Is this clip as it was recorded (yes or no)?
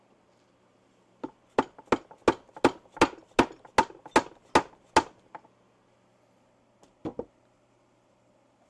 yes